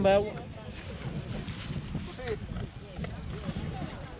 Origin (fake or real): real